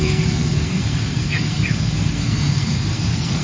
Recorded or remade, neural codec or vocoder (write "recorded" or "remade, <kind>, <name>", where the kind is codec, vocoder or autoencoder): remade, codec, SNAC